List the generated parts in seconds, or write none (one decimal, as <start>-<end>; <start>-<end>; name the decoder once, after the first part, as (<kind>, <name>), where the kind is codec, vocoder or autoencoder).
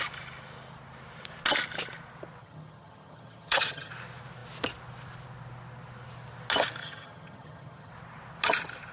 2.4-3.9 (vocoder, HiFi-GAN); 6.8-7.9